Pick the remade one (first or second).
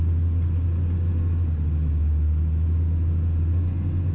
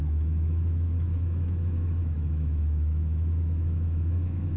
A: second